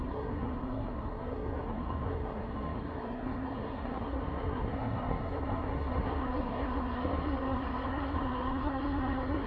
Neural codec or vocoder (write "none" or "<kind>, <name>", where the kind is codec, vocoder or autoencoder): codec, SNAC